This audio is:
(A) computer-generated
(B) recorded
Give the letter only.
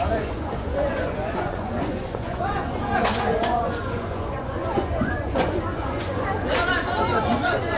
A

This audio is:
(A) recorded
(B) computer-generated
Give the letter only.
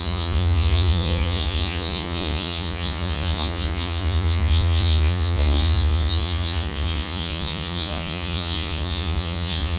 B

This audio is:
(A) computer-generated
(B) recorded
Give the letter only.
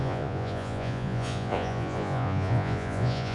A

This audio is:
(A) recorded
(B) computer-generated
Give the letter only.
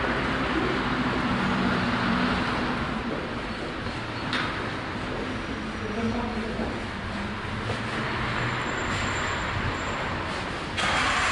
A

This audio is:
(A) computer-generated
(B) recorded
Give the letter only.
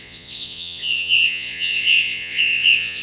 A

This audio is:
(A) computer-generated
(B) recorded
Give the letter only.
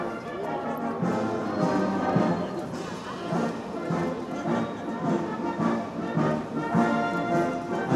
B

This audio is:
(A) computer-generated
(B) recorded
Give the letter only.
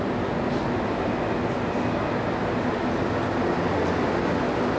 B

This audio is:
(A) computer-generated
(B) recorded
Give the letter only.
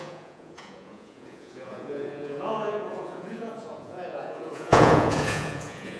A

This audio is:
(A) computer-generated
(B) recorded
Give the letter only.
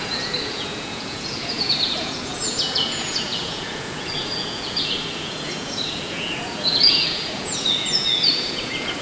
A